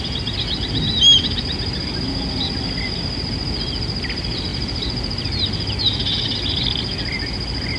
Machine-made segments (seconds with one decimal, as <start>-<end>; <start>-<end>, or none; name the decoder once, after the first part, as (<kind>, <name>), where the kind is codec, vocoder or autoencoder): none